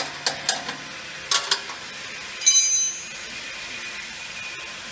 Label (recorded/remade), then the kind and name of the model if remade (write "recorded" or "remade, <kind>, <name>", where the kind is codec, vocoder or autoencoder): recorded